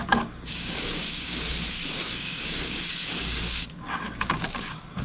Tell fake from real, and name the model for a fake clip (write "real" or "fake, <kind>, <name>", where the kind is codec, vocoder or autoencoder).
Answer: fake, codec, DAC